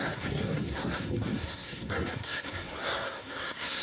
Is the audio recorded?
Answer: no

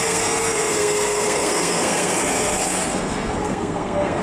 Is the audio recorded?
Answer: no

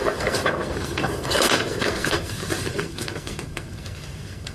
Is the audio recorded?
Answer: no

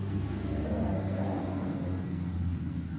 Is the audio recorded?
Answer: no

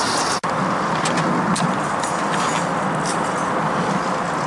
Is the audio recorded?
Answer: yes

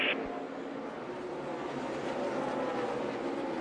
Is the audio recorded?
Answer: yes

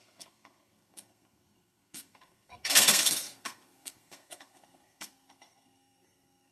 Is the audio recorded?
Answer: no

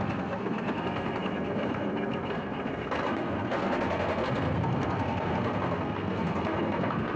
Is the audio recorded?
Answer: no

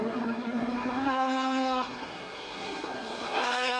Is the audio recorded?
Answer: no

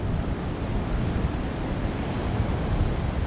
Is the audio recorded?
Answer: yes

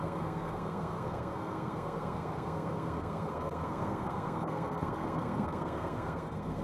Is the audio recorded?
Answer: no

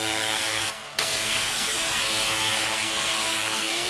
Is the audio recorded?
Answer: no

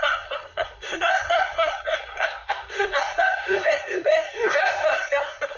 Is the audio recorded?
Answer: no